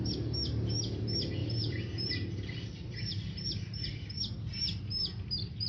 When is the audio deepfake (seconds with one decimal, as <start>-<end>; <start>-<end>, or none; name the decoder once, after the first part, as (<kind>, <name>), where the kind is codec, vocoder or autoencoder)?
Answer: 1.4-4.8 (vocoder, BigVGAN v2)